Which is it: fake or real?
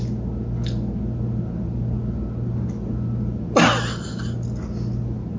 real